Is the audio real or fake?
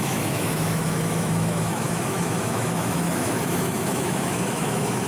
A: fake